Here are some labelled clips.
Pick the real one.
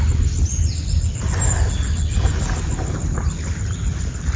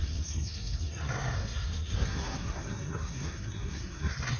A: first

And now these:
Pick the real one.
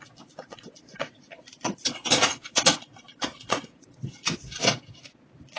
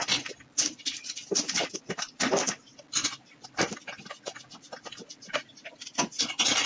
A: second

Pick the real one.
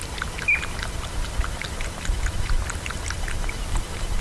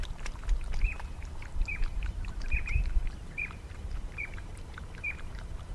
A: first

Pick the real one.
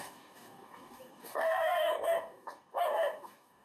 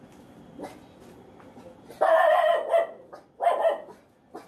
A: second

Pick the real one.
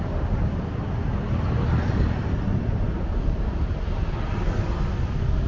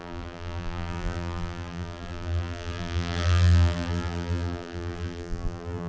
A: first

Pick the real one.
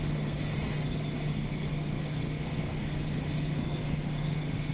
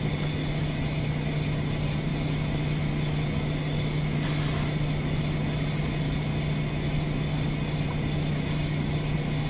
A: second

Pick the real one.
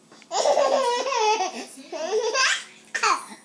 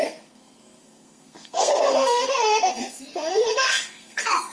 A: first